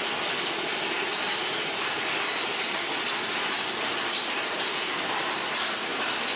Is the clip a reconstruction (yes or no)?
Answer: no